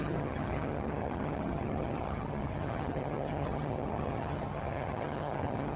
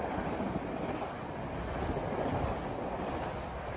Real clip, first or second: second